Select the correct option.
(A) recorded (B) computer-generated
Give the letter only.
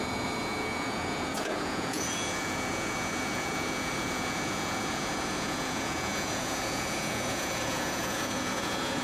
B